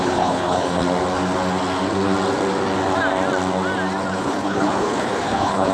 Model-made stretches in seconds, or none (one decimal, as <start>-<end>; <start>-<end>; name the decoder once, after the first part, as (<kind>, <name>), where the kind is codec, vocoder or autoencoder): 0.0-0.8 (codec, HILCodec); 4.2-5.7